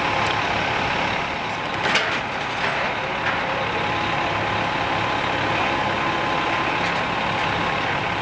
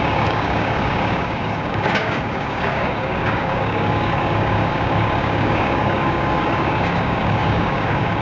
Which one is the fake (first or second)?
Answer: second